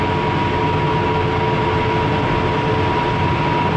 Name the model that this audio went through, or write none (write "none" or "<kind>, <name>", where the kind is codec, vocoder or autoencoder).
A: none